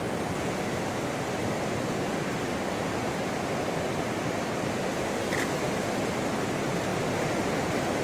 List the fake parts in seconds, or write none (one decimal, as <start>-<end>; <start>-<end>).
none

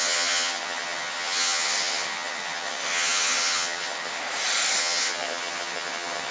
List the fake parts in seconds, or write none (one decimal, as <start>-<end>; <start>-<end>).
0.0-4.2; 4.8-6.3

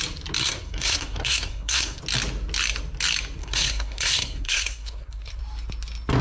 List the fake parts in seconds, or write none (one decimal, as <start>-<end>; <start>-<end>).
0.4-2.0; 3.4-5.4

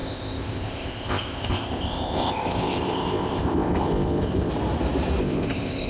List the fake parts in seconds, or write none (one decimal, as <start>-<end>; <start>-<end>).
0.0-4.5; 5.2-5.9